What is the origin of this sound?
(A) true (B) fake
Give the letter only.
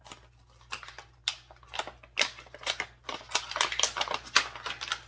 A